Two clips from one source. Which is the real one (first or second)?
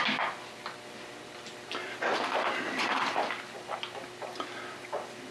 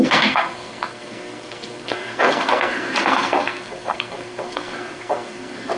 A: first